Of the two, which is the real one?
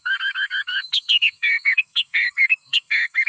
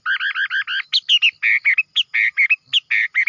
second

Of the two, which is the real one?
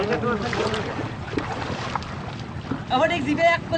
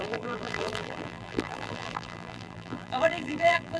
first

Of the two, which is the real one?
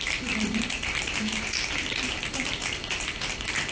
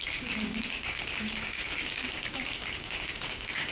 first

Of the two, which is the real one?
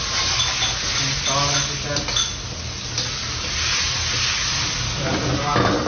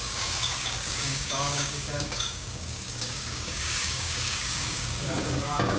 first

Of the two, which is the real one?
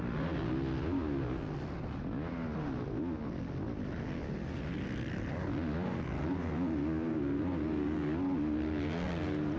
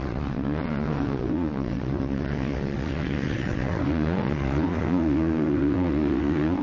first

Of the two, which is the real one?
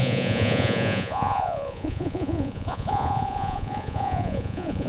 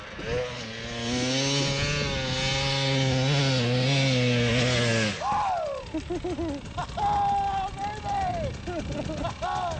second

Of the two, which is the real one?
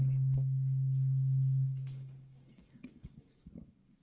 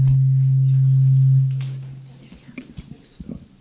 second